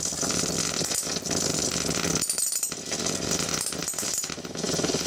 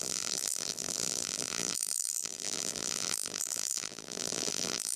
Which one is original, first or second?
first